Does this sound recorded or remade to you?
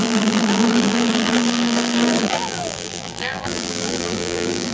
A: remade